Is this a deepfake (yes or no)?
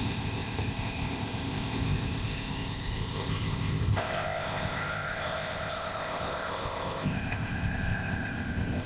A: yes